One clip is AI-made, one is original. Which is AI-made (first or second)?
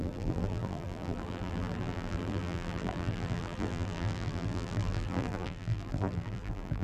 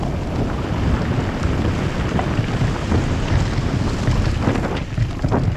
first